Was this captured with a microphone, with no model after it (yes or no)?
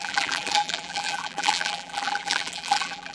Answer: no